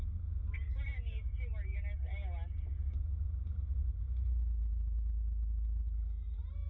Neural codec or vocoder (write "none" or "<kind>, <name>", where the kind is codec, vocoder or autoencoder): none